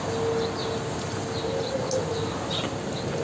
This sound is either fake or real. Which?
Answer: real